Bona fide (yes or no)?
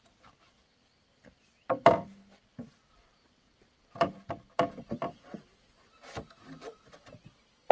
yes